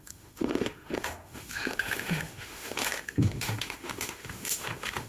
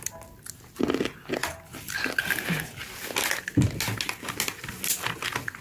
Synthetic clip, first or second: first